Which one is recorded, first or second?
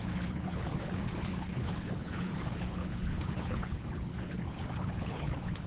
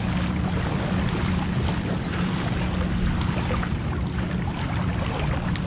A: second